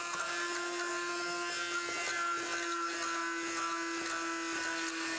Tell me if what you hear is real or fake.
real